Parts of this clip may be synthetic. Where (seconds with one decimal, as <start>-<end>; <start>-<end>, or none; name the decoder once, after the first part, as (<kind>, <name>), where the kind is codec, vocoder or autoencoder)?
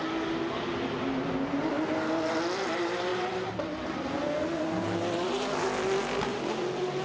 3.1-4.2 (vocoder, BigVGAN v2); 6.3-7.0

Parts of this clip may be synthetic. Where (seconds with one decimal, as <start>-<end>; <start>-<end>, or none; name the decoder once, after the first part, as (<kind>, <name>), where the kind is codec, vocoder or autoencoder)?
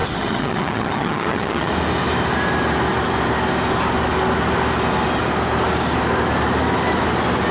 0.0-1.7 (vocoder, HiFi-GAN)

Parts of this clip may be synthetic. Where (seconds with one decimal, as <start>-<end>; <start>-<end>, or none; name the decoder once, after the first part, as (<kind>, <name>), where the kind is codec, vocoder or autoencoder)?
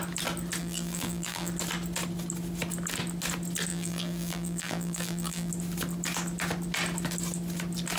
0.6-1.5 (vocoder, BigVGAN v2); 3.7-5.5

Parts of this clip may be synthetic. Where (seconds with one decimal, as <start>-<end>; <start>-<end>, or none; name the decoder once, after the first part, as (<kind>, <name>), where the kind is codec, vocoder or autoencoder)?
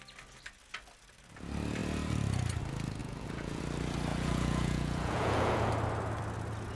3.0-3.6 (vocoder, Vocos); 4.1-5.7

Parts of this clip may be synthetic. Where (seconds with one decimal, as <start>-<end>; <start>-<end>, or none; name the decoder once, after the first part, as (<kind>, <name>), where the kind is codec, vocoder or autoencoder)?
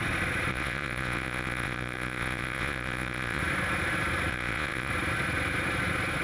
0.5-3.4 (vocoder, Vocos); 4.3-4.9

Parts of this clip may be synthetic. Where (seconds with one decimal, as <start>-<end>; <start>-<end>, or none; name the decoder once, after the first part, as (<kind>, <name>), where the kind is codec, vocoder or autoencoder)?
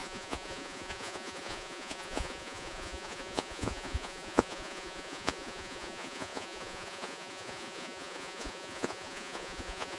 0.0-10.0 (vocoder, Vocos)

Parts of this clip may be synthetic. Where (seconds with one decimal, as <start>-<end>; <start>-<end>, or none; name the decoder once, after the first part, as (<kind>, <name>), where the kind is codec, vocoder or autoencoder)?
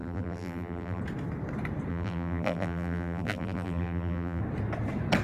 0.0-1.0 (vocoder, BigVGAN v2); 1.9-4.4